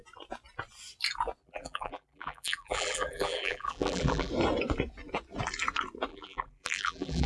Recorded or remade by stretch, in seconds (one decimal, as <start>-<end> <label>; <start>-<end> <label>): 0.0-1.4 recorded; 1.4-4.3 remade; 4.3-6.1 recorded; 6.1-7.3 remade